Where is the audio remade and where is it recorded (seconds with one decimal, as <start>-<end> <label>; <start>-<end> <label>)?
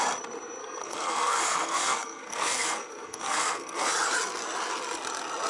0.0-0.6 recorded; 0.6-3.9 remade; 3.9-5.5 recorded